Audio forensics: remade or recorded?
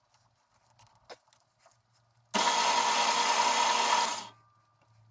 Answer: recorded